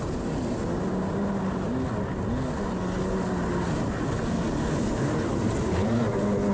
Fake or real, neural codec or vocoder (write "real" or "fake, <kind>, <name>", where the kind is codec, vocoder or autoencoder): real